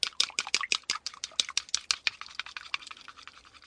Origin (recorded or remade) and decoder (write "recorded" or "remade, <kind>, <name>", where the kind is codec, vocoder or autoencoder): recorded